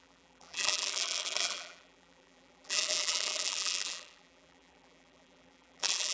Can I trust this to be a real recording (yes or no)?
no